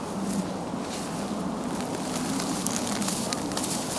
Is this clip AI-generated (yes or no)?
no